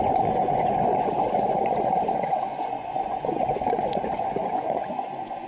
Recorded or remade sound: remade